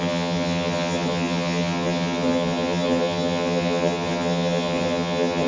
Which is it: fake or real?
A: fake